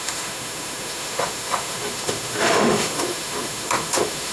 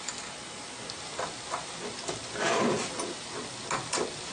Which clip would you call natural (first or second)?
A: second